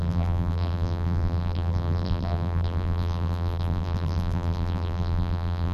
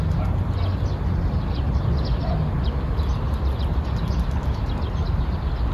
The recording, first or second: second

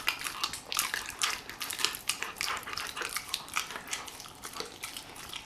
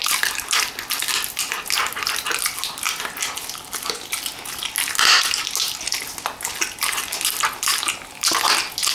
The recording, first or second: second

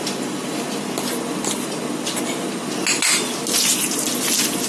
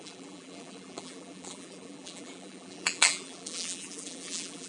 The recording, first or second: first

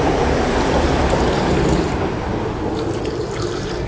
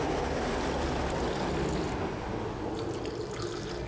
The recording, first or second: second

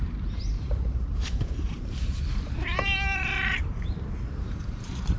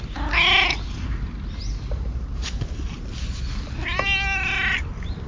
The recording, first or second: second